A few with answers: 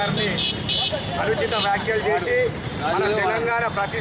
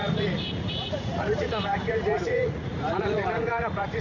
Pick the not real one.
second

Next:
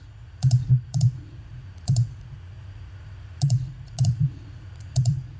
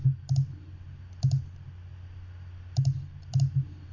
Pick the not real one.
first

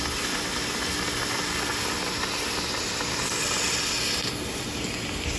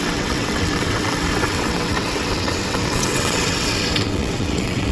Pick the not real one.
second